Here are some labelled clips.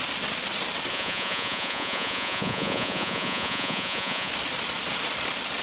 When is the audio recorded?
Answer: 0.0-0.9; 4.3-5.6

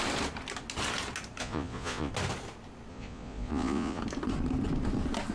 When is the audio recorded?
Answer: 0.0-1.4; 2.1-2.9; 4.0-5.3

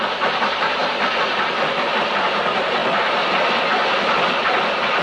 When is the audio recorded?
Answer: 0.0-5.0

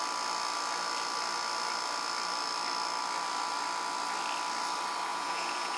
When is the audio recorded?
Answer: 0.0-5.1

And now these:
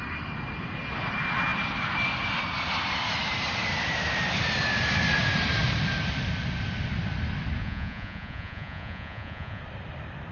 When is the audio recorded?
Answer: 0.0-7.6; 9.6-10.3